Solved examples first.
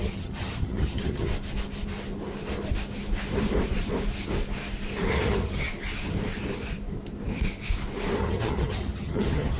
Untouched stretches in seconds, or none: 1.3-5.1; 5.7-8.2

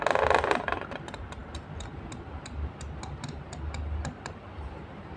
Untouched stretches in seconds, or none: 0.0-5.2

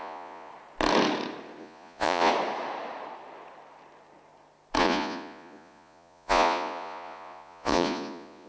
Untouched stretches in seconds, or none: 0.5-1.6; 2.3-4.8

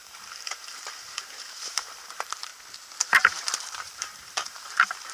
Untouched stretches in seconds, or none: 2.5-3.1

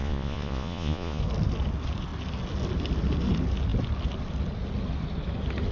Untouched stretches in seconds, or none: 1.2-5.7

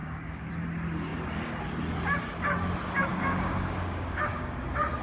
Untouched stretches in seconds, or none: 0.5-3.1; 4.6-5.0

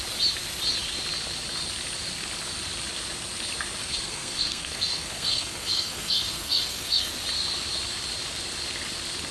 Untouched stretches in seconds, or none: 0.0-3.8; 7.1-9.3